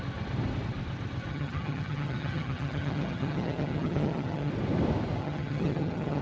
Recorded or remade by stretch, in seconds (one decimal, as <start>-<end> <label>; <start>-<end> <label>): 0.0-1.3 recorded; 1.3-4.5 remade; 4.5-5.2 recorded; 5.2-6.2 remade